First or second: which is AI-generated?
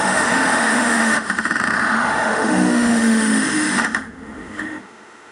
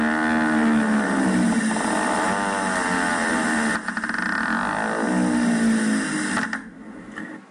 first